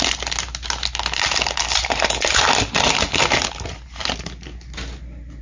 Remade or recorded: recorded